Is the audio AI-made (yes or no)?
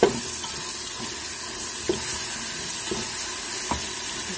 no